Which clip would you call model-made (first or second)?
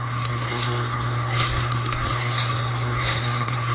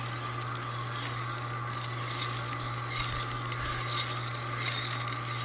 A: first